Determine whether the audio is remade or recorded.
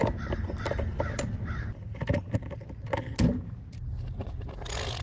recorded